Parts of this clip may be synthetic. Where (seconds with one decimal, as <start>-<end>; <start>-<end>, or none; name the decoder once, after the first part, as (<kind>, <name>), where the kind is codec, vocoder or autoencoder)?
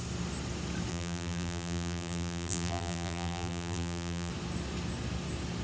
0.9-4.3 (vocoder, BigVGAN v2)